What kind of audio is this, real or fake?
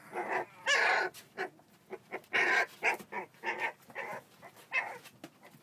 real